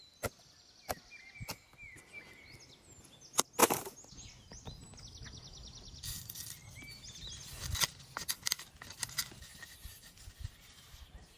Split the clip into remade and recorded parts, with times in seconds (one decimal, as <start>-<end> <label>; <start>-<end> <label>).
0.0-11.4 recorded